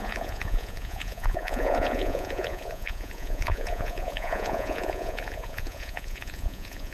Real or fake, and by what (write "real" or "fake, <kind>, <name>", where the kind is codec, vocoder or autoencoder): fake, vocoder, Vocos